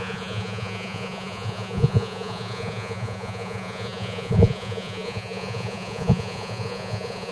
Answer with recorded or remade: remade